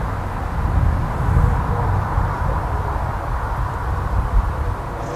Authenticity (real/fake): real